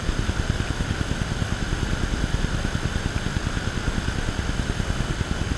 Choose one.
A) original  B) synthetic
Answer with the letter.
A